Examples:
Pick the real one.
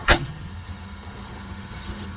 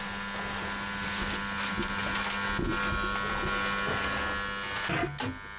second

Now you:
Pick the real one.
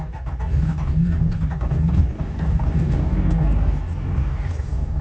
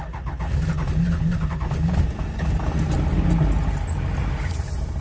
second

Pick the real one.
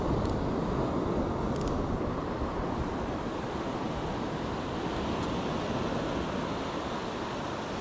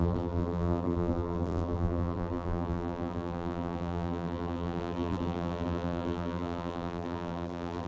first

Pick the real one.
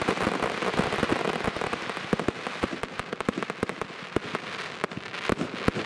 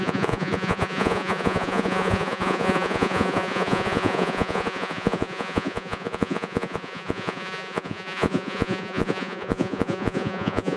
first